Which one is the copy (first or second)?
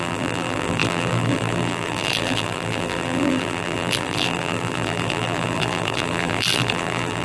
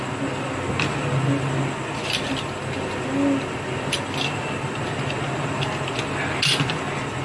first